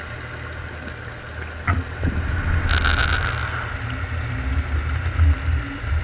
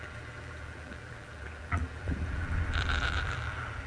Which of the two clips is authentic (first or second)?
first